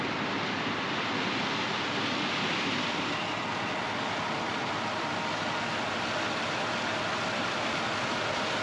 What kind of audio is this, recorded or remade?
recorded